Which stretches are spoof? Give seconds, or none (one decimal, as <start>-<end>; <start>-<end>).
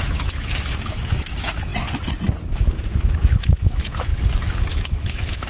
0.0-1.7; 2.3-4.1; 4.7-5.5